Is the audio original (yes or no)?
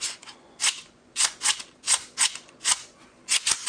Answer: no